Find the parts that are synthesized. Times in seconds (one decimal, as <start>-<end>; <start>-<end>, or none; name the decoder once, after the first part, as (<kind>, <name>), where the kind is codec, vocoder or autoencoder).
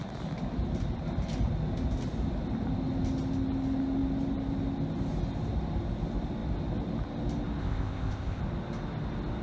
7.6-8.4 (codec, ZipCodec)